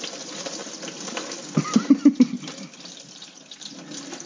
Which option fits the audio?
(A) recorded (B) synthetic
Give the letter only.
A